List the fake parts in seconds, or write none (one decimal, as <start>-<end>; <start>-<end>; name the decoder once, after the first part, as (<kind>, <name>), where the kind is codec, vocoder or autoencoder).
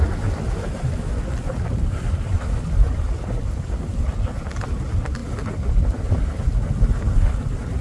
none